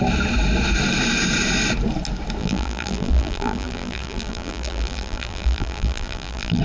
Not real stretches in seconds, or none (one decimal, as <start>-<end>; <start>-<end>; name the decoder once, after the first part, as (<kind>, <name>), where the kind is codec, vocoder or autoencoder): 2.4-6.6 (vocoder, BigVGAN v2)